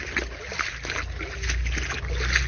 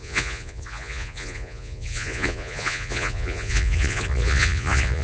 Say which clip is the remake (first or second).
second